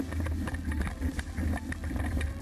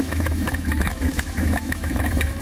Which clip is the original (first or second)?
first